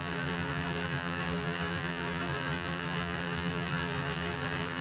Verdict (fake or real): fake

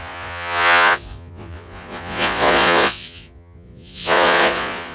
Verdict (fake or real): fake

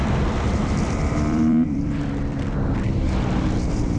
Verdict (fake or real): fake